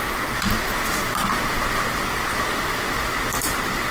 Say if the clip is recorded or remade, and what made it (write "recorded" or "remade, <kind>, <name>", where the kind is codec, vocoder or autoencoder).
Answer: recorded